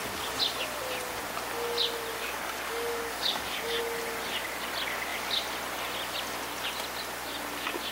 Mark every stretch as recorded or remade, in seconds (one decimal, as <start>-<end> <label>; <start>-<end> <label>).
0.0-2.1 recorded; 2.1-3.8 remade; 3.8-7.9 recorded